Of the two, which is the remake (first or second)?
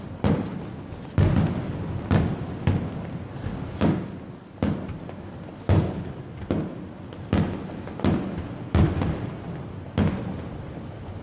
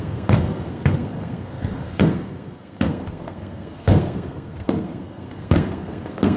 second